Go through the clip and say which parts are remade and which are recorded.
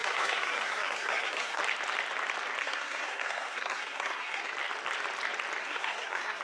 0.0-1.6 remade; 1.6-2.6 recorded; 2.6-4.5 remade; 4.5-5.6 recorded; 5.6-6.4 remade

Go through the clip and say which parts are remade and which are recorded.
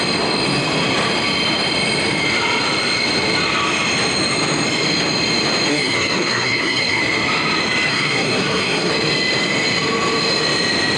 0.0-5.7 recorded; 5.7-7.0 remade; 7.0-7.9 recorded; 7.9-8.9 remade; 8.9-11.0 recorded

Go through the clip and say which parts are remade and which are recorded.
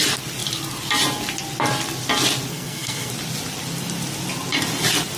0.0-2.5 recorded; 2.5-3.1 remade; 3.1-5.2 recorded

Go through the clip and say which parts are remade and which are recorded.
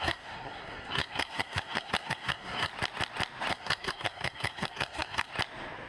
0.0-2.7 remade; 2.7-3.5 recorded; 3.5-5.3 remade; 5.3-5.9 recorded